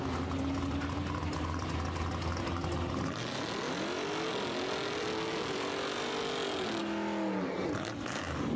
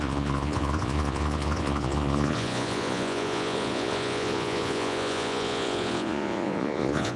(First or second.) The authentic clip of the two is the first